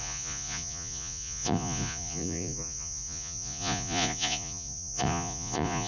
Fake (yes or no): yes